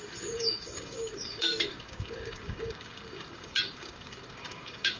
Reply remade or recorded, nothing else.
remade